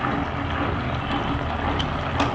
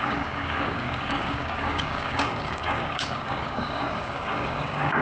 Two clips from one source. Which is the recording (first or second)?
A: first